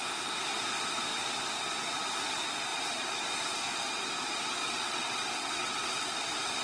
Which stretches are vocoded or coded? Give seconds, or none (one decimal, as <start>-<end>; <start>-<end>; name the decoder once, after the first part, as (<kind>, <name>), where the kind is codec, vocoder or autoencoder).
4.6-6.1 (vocoder, WaveNeXt)